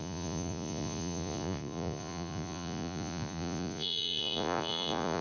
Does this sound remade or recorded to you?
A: remade